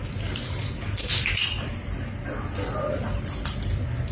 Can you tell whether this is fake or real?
real